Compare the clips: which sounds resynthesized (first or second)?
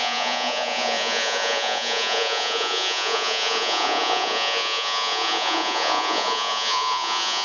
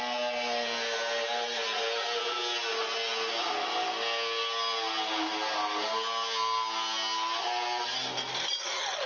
first